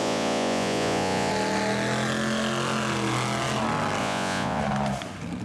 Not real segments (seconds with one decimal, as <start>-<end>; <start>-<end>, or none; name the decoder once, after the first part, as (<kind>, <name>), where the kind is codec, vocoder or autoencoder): 0.0-1.3 (vocoder, Vocos); 4.0-4.6